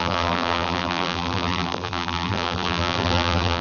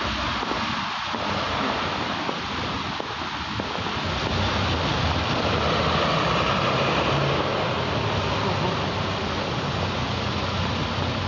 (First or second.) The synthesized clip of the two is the first